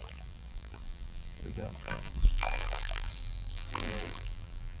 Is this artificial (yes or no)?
yes